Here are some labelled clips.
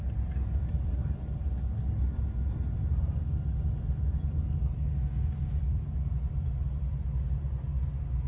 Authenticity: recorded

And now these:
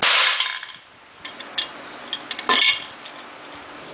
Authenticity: recorded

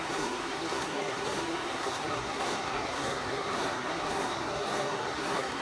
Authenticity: remade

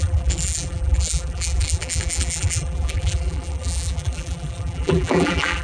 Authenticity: remade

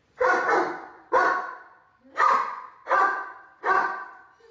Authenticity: remade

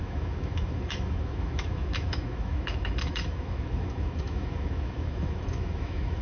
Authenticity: remade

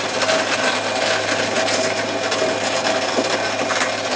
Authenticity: recorded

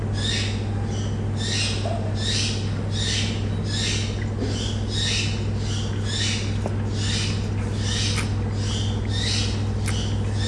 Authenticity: recorded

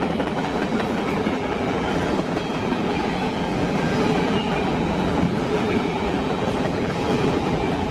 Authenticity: remade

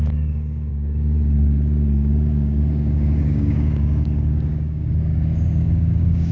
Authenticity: remade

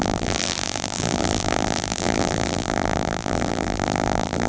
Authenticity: remade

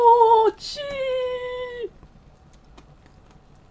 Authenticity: recorded